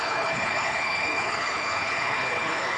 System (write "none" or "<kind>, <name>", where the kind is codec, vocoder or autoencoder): codec, HILCodec